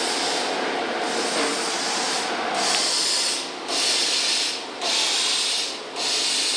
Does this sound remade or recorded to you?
recorded